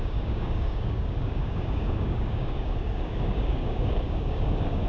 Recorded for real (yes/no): no